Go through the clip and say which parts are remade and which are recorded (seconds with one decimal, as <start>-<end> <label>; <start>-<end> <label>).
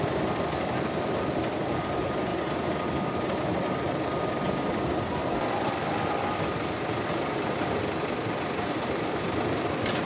0.0-10.1 recorded